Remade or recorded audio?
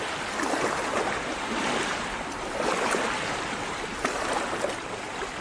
recorded